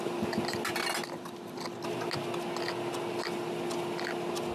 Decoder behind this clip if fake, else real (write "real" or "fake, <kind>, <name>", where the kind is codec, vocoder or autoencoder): real